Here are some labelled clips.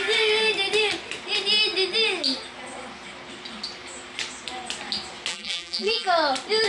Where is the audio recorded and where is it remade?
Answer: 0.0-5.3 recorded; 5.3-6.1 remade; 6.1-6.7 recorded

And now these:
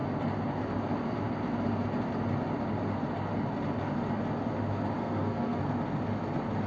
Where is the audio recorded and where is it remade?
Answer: 0.0-5.0 recorded; 5.0-5.6 remade; 5.6-6.7 recorded

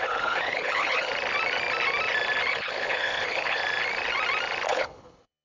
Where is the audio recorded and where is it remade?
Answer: 0.0-1.1 remade; 1.1-2.5 recorded; 2.5-3.6 remade; 3.6-4.7 recorded; 4.7-5.4 remade

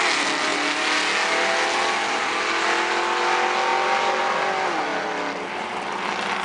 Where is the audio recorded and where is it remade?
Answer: 0.0-6.4 recorded

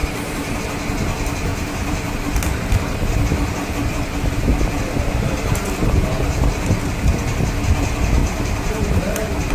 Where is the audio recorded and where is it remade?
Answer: 0.0-0.6 remade; 0.6-1.5 recorded; 1.5-2.7 remade; 2.7-8.2 recorded; 8.2-9.5 remade

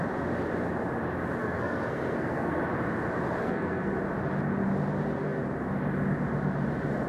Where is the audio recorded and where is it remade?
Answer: 0.0-1.4 recorded; 1.4-2.6 remade; 2.6-3.4 recorded; 3.4-3.9 remade; 3.9-7.1 recorded